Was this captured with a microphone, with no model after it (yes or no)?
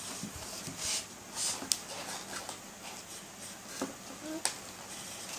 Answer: yes